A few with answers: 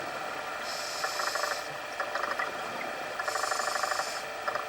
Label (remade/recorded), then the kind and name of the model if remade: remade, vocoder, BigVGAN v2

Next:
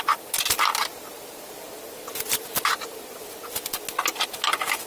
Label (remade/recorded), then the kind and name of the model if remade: recorded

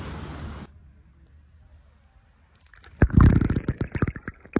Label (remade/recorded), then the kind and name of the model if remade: recorded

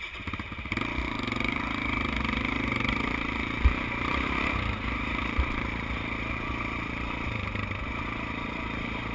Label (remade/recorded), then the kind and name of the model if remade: remade, vocoder, BigVGAN v2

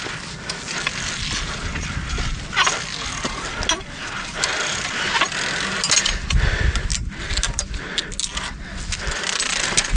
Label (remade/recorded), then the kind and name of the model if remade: recorded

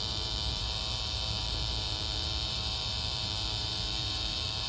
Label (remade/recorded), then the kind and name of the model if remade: remade, vocoder, BigVGAN v2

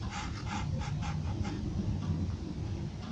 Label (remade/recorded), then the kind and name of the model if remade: recorded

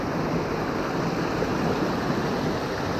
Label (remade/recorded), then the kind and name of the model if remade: recorded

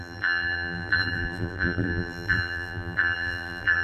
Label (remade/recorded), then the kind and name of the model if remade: remade, vocoder, BigVGAN v2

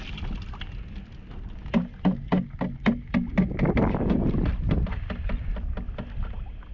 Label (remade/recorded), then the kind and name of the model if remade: recorded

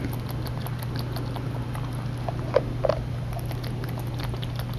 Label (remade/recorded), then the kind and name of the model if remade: recorded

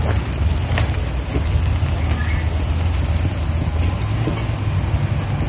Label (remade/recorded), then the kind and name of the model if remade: recorded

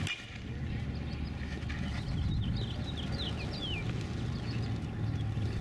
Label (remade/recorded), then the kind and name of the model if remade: recorded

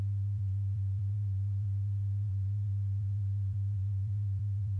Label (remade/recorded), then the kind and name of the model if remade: remade, vocoder, BigVGAN v2